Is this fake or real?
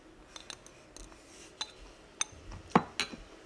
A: real